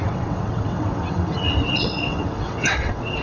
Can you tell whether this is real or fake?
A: fake